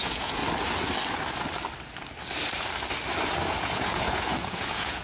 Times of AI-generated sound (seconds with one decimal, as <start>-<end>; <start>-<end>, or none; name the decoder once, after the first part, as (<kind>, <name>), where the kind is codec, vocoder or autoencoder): 0.0-0.4 (vocoder, Vocos); 3.3-5.0